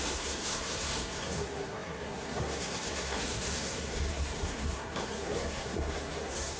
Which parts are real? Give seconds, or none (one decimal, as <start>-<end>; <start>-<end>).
none